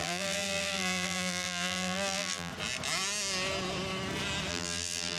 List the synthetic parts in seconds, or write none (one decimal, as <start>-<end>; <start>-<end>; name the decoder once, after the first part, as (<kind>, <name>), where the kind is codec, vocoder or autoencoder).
0.0-2.5 (vocoder, BigVGAN v2); 4.5-5.2